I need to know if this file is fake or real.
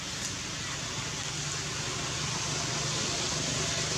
real